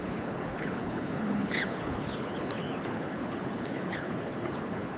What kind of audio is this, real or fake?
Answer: fake